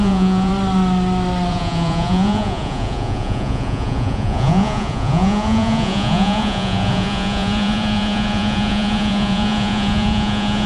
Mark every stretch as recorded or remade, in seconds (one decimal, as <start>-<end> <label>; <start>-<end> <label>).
0.0-0.5 remade; 0.5-1.5 recorded; 1.5-10.7 remade